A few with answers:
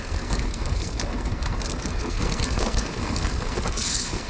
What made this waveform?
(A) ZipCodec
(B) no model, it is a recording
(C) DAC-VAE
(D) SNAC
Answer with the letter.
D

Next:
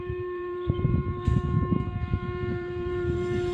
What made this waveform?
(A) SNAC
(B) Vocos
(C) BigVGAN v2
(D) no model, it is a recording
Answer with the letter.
C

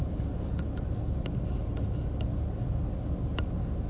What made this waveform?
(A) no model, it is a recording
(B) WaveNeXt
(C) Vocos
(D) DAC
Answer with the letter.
A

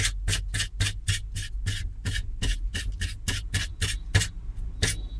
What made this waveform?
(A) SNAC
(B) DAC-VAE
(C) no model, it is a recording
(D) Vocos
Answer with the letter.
C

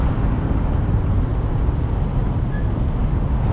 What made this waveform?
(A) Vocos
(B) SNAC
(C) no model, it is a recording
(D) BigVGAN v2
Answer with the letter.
C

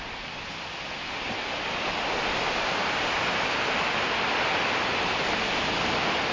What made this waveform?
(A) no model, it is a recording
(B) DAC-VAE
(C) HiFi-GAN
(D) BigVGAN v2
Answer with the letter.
A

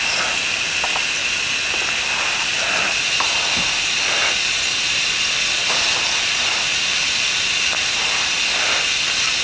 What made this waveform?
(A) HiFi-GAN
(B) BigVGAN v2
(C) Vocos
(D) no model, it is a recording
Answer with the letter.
D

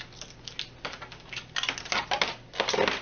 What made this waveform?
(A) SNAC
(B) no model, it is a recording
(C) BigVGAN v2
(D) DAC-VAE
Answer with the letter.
B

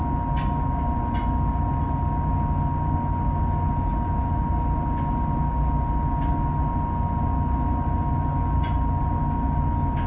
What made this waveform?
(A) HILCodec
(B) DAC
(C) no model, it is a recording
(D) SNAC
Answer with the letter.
C